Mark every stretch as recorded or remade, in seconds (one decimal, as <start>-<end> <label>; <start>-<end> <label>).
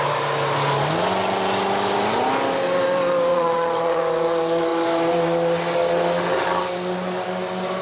0.0-3.3 recorded; 3.3-4.0 remade; 4.0-7.8 recorded